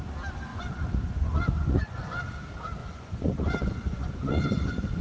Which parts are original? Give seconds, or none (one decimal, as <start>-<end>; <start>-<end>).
0.0-0.5; 2.2-2.8